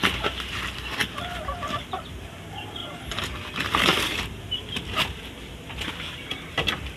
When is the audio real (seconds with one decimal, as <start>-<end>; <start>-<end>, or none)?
none

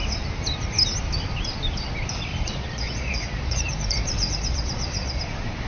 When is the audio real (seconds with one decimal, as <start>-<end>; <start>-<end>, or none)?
0.0-2.3; 5.2-5.7